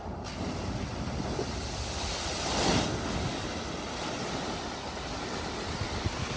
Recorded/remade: recorded